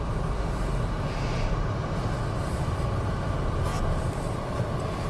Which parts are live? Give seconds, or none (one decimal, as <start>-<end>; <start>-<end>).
0.0-5.1